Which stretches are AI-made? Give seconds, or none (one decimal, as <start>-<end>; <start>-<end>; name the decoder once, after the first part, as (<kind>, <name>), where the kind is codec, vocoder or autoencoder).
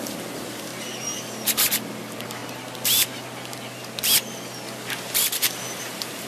0.0-0.7 (vocoder, BigVGAN v2); 1.2-2.4; 5.8-6.3